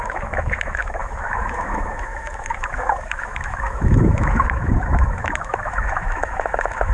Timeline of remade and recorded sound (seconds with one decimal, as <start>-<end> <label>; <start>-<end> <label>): 0.0-6.9 remade